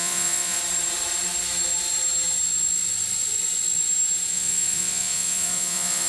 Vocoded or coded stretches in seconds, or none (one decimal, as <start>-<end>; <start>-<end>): 0.0-0.6; 4.3-6.1